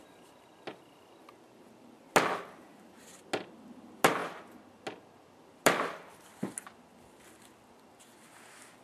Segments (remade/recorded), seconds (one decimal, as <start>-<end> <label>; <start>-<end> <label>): 0.0-8.8 recorded